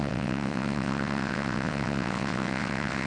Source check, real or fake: fake